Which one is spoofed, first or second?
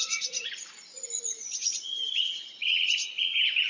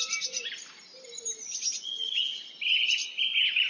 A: first